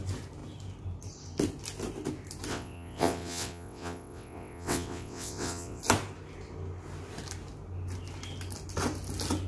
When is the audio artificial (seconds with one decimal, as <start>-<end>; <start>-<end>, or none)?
2.5-5.8